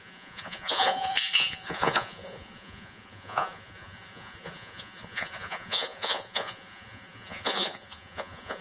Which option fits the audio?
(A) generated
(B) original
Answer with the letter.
A